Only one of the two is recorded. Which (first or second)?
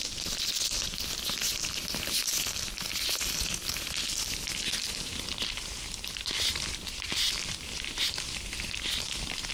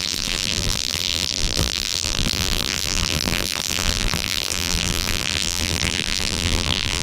first